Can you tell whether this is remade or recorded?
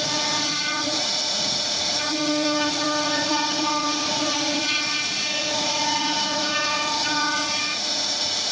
remade